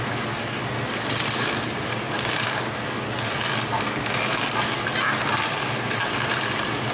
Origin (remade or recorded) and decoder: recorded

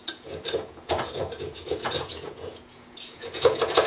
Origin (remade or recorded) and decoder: remade, vocoder, Vocos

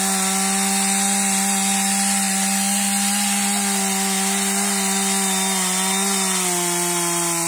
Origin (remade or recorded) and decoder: recorded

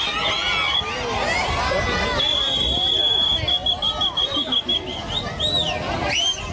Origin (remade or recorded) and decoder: recorded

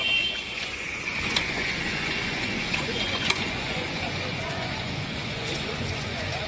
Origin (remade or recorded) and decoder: remade, vocoder, Vocos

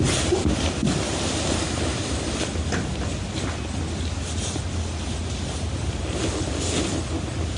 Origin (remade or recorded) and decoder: recorded